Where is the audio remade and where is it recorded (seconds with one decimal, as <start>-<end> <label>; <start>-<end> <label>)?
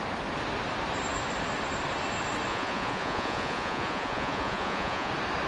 0.0-2.5 recorded; 2.5-5.1 remade; 5.1-5.5 recorded